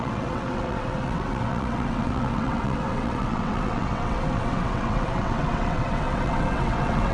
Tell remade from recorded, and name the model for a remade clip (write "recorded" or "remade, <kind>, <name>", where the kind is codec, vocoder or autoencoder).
remade, vocoder, WaveNeXt